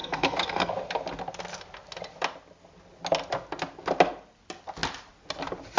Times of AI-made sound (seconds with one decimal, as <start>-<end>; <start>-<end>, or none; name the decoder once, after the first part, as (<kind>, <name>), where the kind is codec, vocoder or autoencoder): 0.0-0.7 (codec, SNAC)